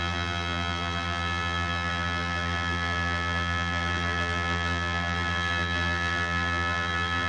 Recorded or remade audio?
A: remade